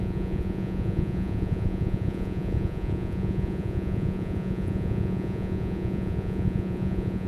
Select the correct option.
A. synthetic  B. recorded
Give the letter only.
A